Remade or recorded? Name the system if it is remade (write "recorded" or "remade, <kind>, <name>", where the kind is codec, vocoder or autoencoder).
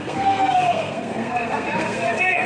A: remade, codec, SNAC